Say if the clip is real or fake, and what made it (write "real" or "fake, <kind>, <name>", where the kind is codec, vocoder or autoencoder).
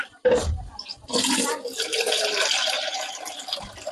real